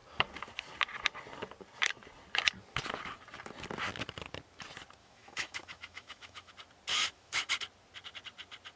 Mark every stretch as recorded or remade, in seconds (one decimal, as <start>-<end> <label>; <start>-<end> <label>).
0.0-5.0 recorded; 5.0-6.5 remade; 6.5-6.9 recorded; 6.9-7.5 remade; 7.5-8.8 recorded